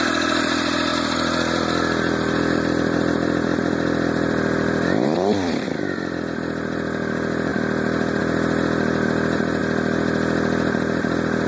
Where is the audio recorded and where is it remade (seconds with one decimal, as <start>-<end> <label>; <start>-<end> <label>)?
0.0-0.9 recorded; 0.9-6.1 remade; 6.1-7.5 recorded; 7.5-8.2 remade; 8.2-11.5 recorded